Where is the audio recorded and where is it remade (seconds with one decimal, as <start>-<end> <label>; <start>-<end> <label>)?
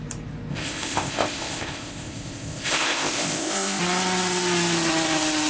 0.0-0.5 recorded; 0.5-3.8 remade; 3.8-5.5 recorded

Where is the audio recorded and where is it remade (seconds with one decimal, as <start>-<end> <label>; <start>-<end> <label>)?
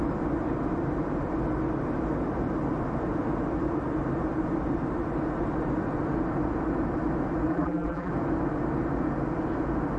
0.0-7.5 recorded; 7.5-8.1 remade; 8.1-10.0 recorded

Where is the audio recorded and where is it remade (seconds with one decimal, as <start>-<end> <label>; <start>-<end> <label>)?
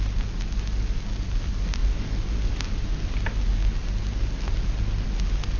0.0-5.6 recorded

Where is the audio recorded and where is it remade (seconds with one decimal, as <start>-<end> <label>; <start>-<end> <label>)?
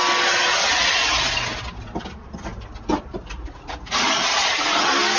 0.0-5.2 recorded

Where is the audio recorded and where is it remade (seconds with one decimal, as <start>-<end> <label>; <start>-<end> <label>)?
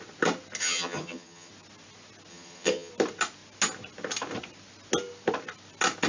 0.0-0.6 recorded; 0.6-1.5 remade; 1.5-2.3 recorded; 2.3-2.9 remade; 2.9-6.1 recorded